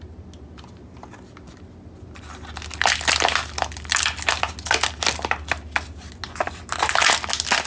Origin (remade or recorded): recorded